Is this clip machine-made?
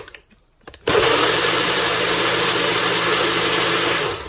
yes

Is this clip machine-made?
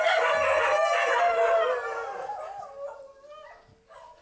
no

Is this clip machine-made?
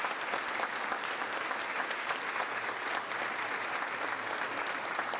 no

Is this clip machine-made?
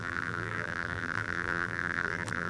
yes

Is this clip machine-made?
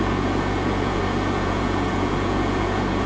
yes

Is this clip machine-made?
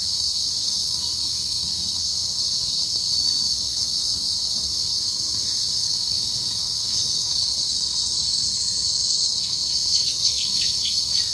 yes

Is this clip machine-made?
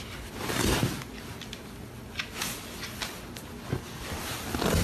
no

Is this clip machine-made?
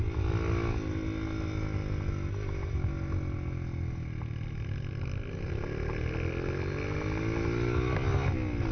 no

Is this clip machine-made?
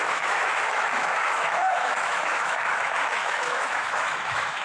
yes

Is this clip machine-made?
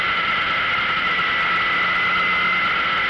no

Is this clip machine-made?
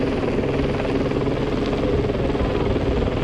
no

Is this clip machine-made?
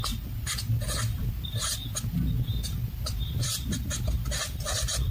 no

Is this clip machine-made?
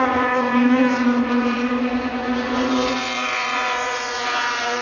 yes